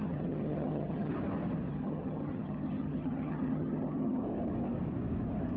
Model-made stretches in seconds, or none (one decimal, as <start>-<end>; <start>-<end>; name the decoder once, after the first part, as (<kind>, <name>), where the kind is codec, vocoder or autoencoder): 0.0-1.1 (vocoder, HiFi-GAN); 1.7-4.2